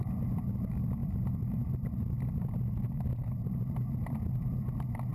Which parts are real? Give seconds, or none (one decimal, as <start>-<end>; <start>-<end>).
0.0-5.1